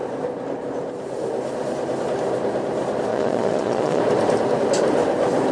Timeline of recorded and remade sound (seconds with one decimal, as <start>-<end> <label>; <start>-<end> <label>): 0.0-3.1 recorded; 3.1-4.0 remade; 4.0-5.5 recorded